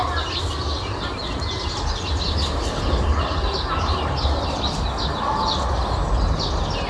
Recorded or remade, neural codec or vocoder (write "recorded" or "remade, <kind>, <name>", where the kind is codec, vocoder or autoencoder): recorded